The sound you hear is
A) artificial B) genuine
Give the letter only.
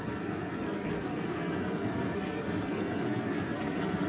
A